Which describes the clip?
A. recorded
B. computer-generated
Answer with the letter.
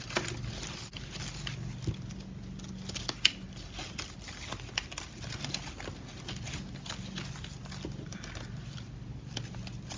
A